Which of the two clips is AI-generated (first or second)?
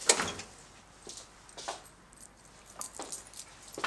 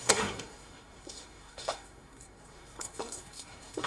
second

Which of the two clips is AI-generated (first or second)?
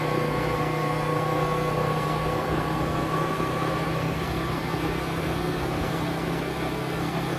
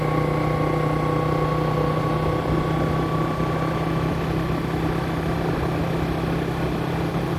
first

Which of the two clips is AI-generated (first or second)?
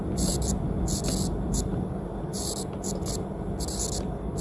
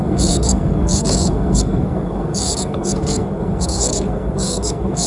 second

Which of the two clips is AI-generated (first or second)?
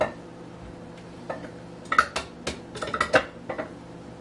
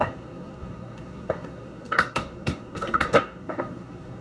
second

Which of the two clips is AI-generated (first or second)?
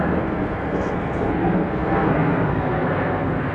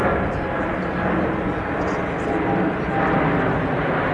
first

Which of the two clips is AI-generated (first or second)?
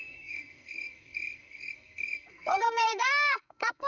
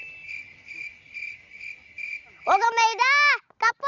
first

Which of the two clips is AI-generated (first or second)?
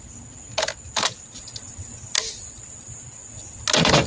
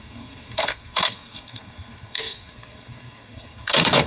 second